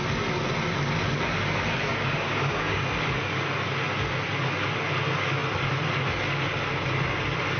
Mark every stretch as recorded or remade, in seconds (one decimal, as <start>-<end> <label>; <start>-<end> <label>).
0.0-1.9 recorded; 1.9-2.8 remade; 2.8-7.6 recorded